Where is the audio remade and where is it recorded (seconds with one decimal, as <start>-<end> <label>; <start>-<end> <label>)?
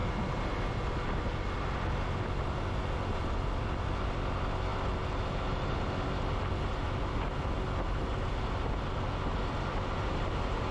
0.0-10.7 recorded